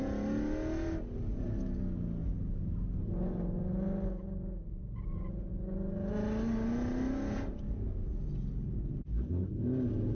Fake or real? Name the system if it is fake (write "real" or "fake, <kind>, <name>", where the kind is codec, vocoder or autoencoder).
real